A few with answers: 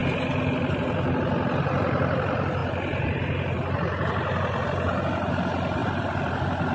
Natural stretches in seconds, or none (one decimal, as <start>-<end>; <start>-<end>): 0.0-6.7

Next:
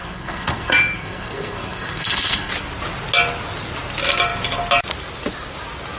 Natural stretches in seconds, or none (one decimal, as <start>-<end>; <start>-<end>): 2.5-6.0

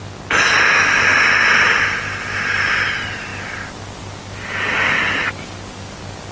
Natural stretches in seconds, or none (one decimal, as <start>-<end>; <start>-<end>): 0.0-6.3

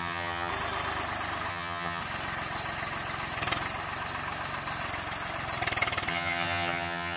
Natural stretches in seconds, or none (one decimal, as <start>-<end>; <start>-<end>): 0.5-1.5; 2.0-6.1

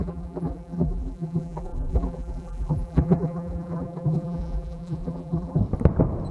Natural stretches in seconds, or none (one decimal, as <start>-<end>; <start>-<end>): 5.6-6.3

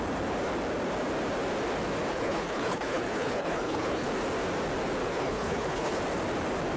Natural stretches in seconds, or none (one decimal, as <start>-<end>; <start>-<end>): 0.0-2.1; 4.1-5.0; 6.0-6.8

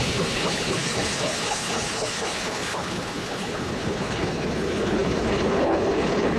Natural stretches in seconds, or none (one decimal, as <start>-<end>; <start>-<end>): none